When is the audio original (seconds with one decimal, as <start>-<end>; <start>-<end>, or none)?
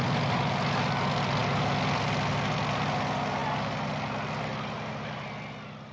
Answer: 0.0-5.9